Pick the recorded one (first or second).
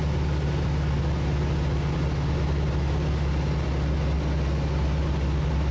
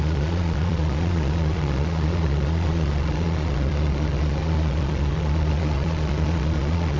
first